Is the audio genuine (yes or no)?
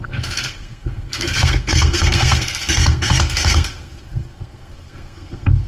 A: no